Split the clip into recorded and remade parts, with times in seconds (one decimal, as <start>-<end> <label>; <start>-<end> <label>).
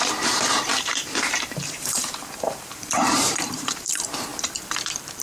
0.0-4.3 remade; 4.3-4.8 recorded; 4.8-5.2 remade